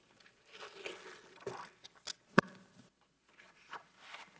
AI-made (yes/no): no